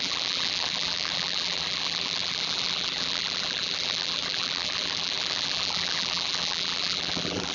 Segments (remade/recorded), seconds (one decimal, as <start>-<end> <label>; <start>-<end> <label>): 0.0-7.5 remade